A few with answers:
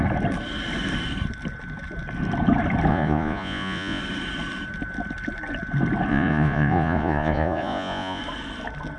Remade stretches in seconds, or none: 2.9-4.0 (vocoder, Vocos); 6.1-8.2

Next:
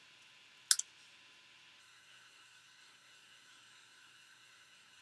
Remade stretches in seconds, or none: 1.8-5.0 (codec, SNAC)

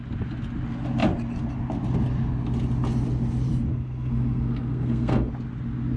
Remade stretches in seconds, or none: 3.7-5.3 (codec, SNAC)

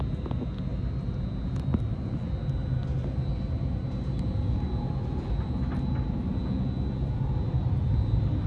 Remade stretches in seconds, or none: none

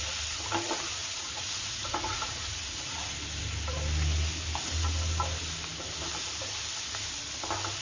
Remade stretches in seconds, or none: 1.0-3.0 (vocoder, Vocos)

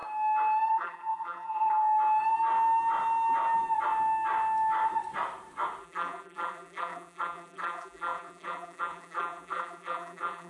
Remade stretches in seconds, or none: 0.7-1.8 (vocoder, BigVGAN v2); 5.8-10.5